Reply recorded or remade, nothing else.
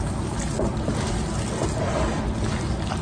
recorded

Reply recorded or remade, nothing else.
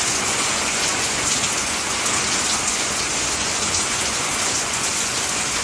remade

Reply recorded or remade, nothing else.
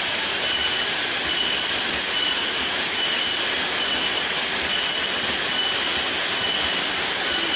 recorded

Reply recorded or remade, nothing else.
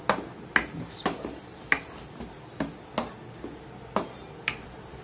recorded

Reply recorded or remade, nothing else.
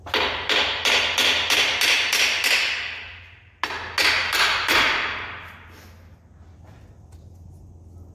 recorded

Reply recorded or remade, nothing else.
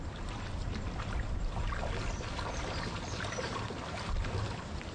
recorded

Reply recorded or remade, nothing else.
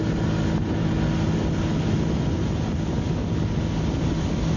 recorded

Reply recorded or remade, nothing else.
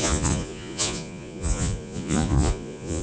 remade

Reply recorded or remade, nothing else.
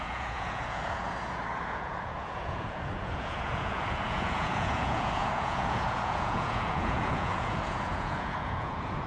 remade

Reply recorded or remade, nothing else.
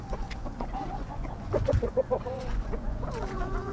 remade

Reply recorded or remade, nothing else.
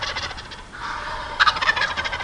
recorded